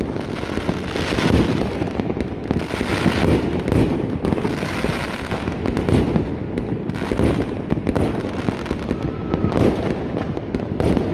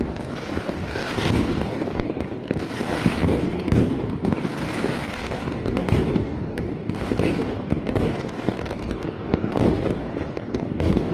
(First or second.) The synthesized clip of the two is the second